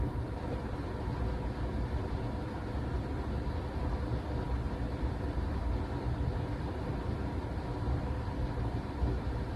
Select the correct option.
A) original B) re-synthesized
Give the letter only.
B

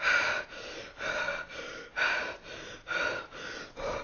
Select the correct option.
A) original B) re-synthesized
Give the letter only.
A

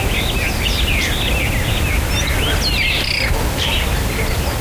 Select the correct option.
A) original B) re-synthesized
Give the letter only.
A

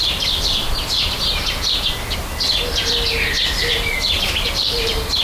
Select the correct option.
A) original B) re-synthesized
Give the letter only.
B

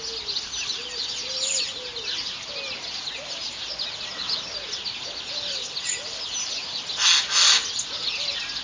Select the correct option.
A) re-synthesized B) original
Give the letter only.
B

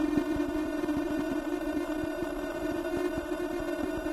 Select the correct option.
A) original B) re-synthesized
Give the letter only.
B